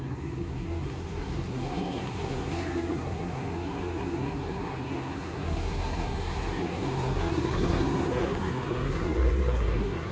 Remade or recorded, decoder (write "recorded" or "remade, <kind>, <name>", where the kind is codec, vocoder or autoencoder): remade, codec, SNAC